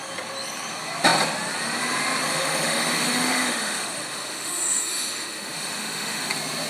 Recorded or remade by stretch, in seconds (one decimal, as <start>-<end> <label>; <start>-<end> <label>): 0.0-2.3 recorded; 2.3-6.3 remade; 6.3-6.7 recorded